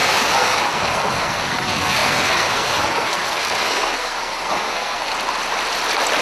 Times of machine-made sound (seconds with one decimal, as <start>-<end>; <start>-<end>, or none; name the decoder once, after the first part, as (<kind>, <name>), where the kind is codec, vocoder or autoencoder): 0.0-5.1 (codec, SNAC)